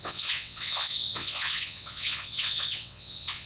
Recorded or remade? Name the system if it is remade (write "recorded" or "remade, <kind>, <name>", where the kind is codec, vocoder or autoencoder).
remade, vocoder, WaveNeXt